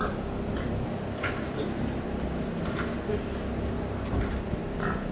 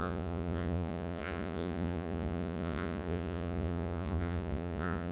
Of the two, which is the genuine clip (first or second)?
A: first